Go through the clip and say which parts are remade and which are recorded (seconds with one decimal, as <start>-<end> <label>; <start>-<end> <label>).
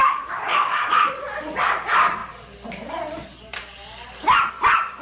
0.0-1.1 remade; 1.1-5.0 recorded